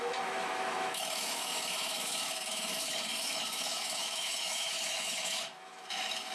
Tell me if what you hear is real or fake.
fake